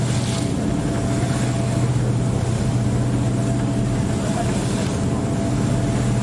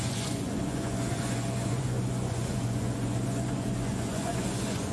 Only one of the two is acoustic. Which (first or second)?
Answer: first